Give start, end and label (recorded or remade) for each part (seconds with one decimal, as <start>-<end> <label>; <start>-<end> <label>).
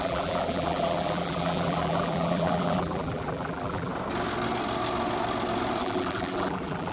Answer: 0.0-3.9 remade; 3.9-5.8 recorded; 5.8-6.9 remade